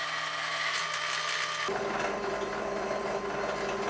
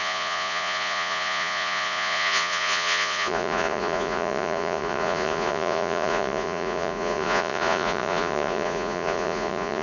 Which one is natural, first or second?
first